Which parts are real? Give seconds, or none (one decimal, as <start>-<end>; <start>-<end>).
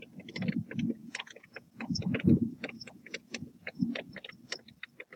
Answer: 0.0-1.0; 4.1-5.2